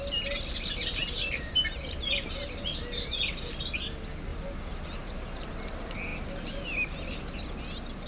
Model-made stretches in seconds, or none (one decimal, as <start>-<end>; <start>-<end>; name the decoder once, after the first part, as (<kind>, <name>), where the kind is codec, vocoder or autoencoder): 1.0-2.4 (vocoder, BigVGAN v2); 4.3-5.5